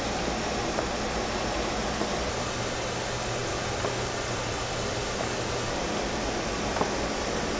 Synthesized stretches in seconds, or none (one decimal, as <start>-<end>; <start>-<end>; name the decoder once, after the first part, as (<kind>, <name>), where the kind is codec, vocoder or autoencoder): none